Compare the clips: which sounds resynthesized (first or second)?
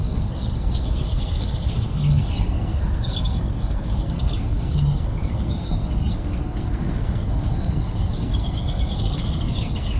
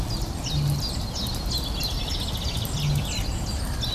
first